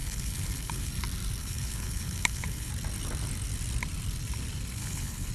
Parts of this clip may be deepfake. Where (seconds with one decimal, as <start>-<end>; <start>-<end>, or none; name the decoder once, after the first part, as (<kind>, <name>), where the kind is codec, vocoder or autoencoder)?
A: 0.0-0.9 (codec, HILCodec); 1.4-2.7; 4.8-5.3